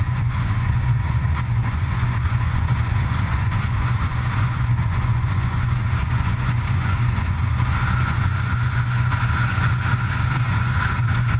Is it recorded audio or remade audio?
remade